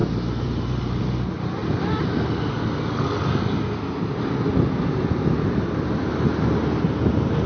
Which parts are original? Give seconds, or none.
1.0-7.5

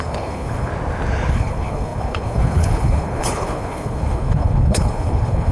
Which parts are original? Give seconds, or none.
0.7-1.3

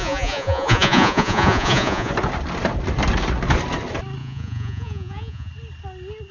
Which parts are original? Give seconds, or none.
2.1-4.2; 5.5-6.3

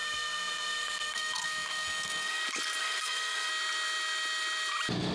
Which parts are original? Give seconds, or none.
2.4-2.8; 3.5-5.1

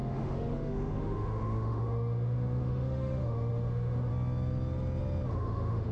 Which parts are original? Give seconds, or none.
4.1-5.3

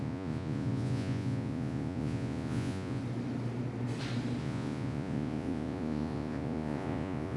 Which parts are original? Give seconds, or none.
3.0-4.4

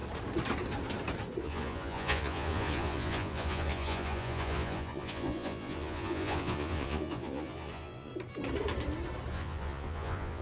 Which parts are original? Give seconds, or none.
0.0-1.4; 8.1-9.3